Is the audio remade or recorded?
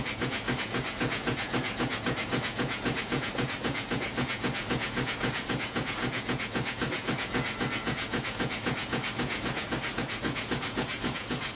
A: remade